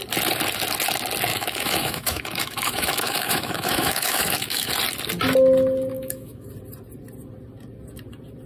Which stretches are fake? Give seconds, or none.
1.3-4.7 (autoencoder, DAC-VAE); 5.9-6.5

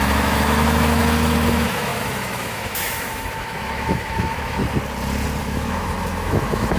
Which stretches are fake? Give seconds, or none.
0.0-1.0 (autoencoder, DAC-VAE); 1.5-4.6; 5.4-6.8

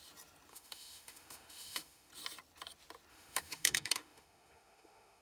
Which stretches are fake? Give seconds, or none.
0.5-2.1 (autoencoder, DAC-VAE); 3.1-5.2

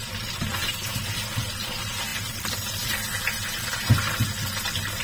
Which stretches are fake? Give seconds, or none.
none

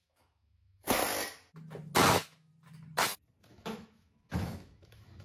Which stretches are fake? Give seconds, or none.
0.0-1.0 (autoencoder, DAC-VAE); 2.1-2.5; 3.5-5.2